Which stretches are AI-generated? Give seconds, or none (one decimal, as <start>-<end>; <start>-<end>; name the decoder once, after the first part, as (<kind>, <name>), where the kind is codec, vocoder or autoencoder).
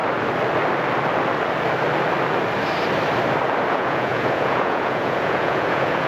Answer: 3.7-6.1 (vocoder, Vocos)